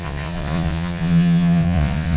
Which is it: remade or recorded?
remade